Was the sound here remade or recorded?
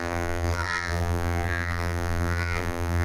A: remade